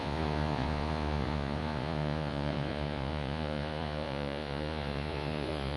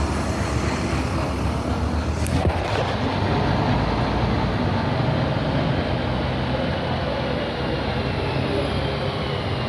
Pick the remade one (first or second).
first